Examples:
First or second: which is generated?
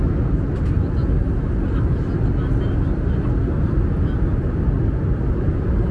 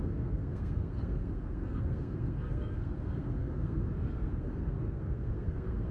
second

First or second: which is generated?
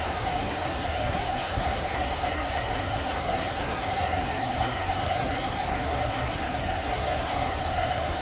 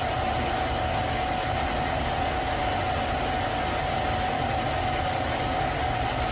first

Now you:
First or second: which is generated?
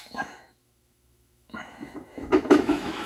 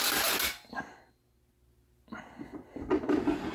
first